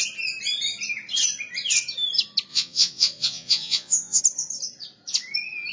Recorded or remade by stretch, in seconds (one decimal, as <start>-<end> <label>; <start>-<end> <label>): 0.0-2.5 recorded; 2.5-4.2 remade; 4.2-5.7 recorded